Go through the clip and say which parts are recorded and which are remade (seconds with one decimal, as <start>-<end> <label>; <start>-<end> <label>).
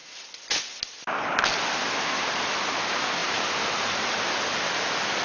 0.0-3.2 recorded; 3.2-4.1 remade; 4.1-5.2 recorded